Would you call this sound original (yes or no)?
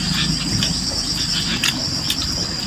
yes